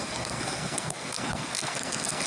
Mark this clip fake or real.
fake